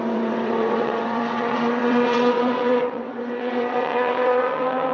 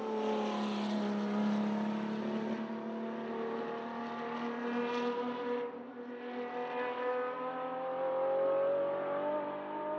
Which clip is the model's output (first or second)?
first